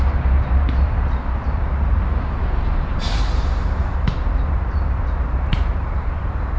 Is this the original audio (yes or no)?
no